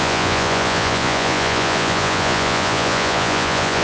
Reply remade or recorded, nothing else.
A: remade